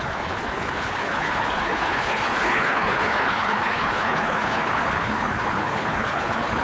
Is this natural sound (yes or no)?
no